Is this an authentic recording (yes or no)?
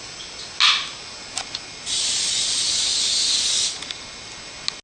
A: yes